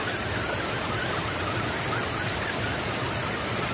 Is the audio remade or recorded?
recorded